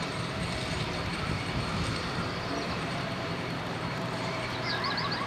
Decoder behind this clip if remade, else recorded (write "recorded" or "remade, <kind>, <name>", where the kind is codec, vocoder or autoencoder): remade, vocoder, BigVGAN v2